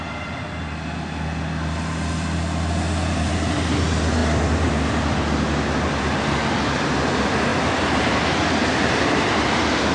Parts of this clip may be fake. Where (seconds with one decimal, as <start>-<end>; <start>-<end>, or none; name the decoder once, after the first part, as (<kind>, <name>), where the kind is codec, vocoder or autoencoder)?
none